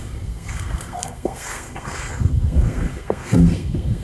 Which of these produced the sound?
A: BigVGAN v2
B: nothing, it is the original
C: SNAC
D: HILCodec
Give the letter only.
C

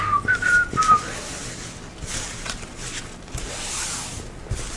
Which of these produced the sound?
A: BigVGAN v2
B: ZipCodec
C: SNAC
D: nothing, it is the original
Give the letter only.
D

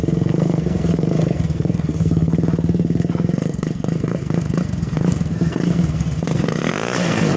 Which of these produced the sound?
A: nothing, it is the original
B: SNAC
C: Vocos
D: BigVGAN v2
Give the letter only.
B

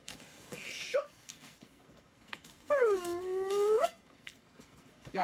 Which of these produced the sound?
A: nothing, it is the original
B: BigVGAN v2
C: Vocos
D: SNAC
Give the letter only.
D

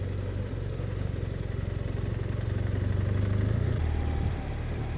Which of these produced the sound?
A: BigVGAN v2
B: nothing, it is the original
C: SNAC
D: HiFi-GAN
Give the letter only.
B